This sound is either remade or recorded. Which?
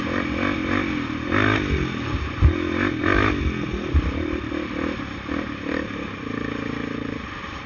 recorded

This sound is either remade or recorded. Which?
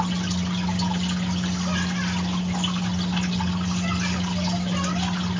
recorded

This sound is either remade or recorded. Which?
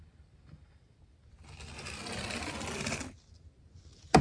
recorded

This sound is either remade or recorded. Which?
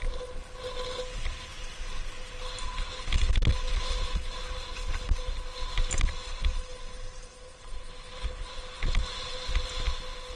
recorded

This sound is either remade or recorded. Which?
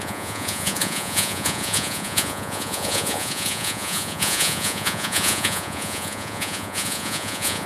remade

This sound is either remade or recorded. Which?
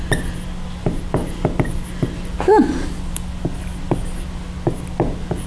recorded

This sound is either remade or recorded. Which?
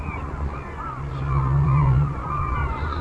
remade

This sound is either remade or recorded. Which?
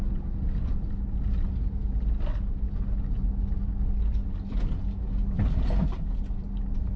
recorded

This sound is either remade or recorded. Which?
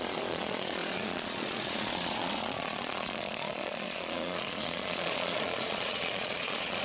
remade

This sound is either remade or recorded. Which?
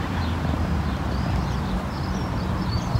recorded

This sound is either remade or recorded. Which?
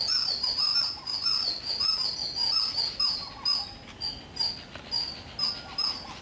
recorded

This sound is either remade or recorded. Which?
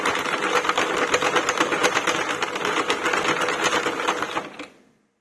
recorded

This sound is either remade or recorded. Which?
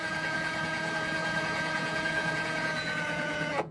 remade